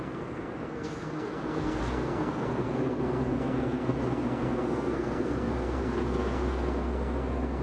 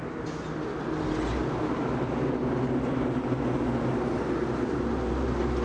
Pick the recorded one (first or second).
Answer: second